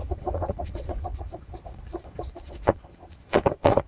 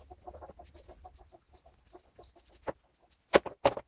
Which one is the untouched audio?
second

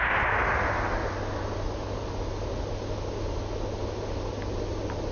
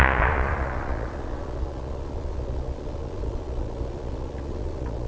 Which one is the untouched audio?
first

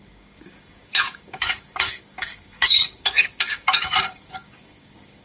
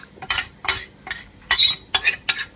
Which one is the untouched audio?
second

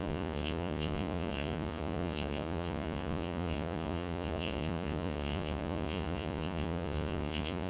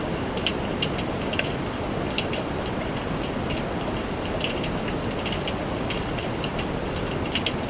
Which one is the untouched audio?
second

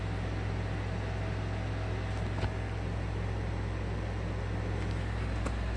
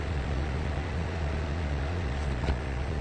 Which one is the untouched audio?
first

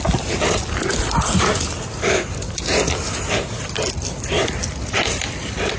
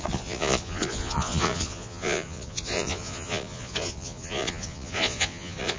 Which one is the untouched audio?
first